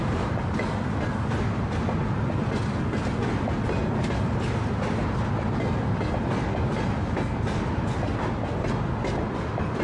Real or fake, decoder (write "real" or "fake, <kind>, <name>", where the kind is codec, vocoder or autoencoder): real